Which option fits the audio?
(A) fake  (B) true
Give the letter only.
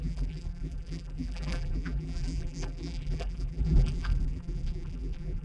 A